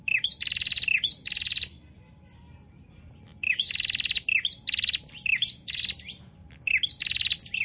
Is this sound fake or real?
real